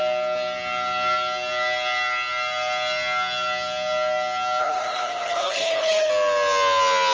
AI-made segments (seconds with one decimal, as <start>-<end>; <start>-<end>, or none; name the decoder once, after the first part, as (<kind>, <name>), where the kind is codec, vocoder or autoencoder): 4.6-6.1 (codec, HILCodec)